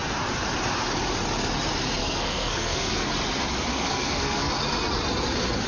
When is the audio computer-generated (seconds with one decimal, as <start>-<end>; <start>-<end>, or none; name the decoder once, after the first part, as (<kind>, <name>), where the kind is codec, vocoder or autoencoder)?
2.0-3.1 (codec, SNAC); 3.7-4.5